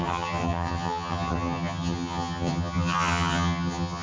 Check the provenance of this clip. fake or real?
fake